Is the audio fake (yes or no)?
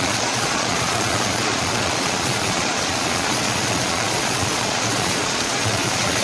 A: yes